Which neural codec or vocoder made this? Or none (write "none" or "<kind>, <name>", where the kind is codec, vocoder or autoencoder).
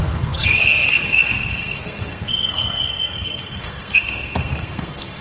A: codec, SNAC